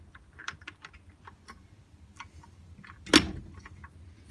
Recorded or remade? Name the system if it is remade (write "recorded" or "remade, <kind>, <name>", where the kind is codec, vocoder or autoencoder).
recorded